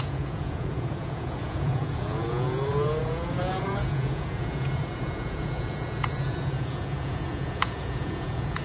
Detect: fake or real fake